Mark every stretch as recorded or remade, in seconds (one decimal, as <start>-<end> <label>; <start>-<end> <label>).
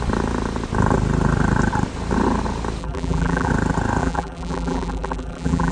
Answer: 0.0-2.8 recorded; 2.8-3.5 remade; 3.5-4.0 recorded; 4.0-5.7 remade